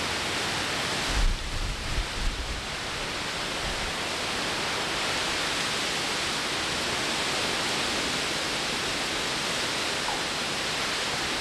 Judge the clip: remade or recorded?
recorded